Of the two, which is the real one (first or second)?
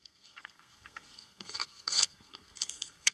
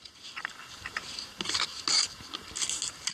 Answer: second